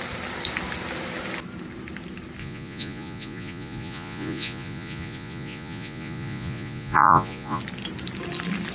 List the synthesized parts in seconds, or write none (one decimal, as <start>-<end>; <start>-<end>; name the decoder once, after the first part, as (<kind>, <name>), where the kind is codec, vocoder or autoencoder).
2.4-7.6 (vocoder, Vocos)